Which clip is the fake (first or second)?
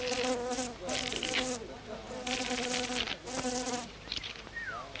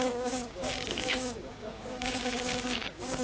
second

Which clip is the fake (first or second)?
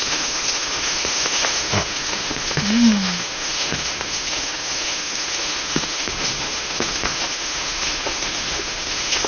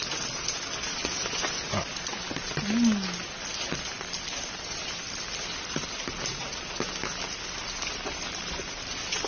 first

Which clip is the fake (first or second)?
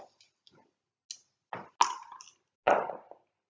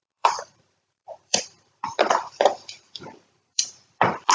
second